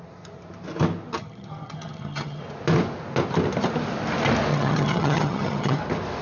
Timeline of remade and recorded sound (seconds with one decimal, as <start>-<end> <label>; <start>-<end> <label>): 0.0-1.2 recorded; 1.2-2.4 remade; 2.4-4.5 recorded; 4.5-5.8 remade; 5.8-6.2 recorded